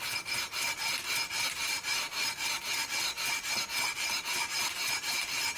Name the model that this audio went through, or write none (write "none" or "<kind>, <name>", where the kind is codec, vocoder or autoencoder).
none